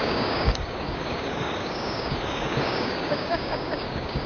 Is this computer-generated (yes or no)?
yes